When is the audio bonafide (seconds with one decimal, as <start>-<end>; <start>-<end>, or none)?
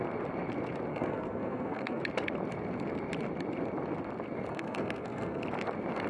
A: 0.0-0.9; 2.0-4.5; 5.4-6.1